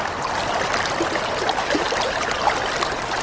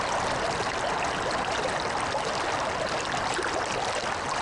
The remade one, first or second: first